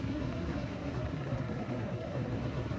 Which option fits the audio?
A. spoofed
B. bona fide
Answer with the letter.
A